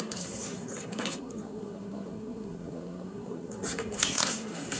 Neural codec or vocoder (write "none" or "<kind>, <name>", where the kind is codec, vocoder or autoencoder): codec, SNAC